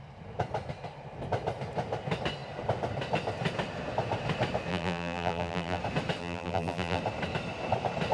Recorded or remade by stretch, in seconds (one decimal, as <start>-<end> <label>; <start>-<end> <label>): 0.0-4.7 recorded; 4.7-5.8 remade; 5.8-6.2 recorded; 6.2-7.0 remade; 7.0-8.1 recorded